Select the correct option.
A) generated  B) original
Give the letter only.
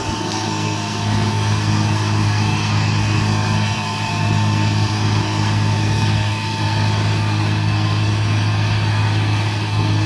A